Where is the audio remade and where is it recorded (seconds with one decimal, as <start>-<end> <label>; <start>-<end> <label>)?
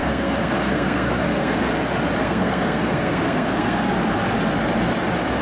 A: 0.0-1.7 remade; 1.7-2.2 recorded; 2.2-3.9 remade; 3.9-5.4 recorded